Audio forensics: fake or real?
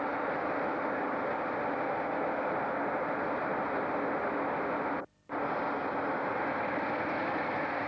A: real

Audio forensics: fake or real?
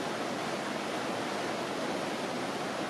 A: real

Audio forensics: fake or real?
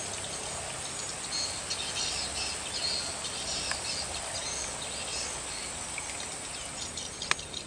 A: real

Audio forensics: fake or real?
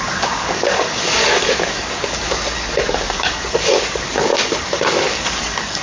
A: fake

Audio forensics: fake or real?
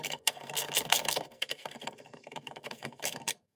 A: fake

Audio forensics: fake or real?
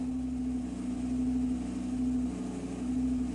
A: real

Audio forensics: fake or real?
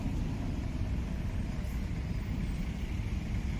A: real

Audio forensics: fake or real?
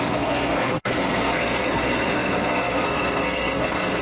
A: fake